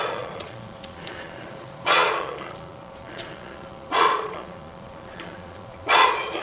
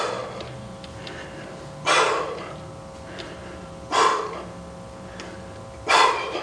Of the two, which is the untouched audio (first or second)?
second